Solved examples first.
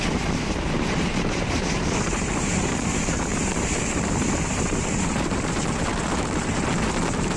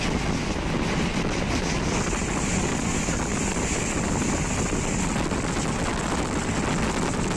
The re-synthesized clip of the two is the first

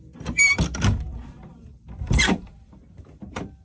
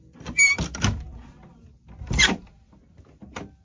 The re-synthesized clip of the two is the first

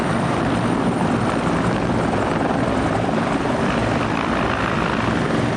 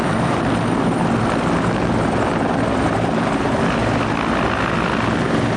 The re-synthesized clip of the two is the first